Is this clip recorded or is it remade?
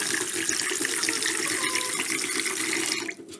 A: recorded